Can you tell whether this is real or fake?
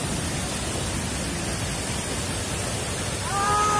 real